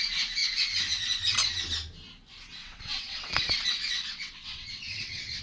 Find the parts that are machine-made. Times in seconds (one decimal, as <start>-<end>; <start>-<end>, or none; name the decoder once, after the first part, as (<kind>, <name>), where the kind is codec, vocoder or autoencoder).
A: 2.6-5.4 (vocoder, WaveNeXt)

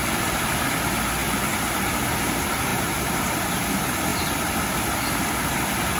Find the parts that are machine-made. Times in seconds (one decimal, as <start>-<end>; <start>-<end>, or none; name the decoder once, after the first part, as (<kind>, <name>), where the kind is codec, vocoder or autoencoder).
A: none